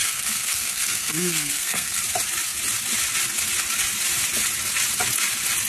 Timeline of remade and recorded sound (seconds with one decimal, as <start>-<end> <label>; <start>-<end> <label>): 0.0-2.0 remade; 2.0-5.7 recorded